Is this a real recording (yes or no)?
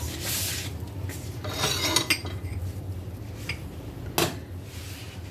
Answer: yes